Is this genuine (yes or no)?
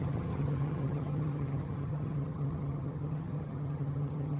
no